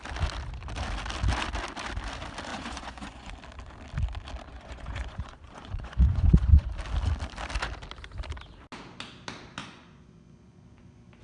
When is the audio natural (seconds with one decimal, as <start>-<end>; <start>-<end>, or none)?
0.0-2.5; 3.3-4.5; 6.7-9.6